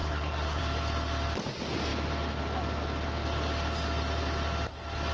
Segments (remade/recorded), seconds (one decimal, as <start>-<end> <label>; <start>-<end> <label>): 0.0-0.6 remade; 0.6-5.1 recorded